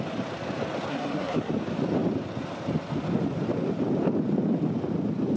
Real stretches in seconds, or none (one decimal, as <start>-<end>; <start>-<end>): 0.0-0.9; 1.5-5.4